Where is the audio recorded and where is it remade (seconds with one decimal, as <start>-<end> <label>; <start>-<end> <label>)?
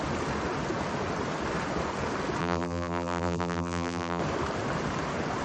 0.0-2.4 recorded; 2.4-4.2 remade; 4.2-5.4 recorded